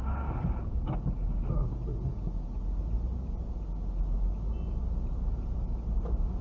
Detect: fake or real real